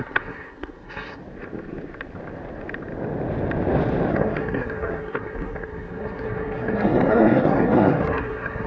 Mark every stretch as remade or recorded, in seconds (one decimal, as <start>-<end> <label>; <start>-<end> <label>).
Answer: 0.0-1.2 remade; 1.2-4.1 recorded; 4.1-8.7 remade